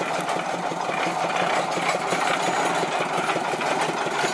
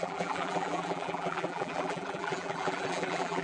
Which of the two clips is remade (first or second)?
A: second